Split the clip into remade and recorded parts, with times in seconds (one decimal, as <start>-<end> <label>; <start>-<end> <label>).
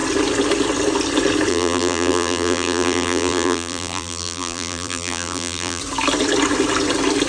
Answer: 0.0-1.5 recorded; 1.5-5.8 remade; 5.8-7.3 recorded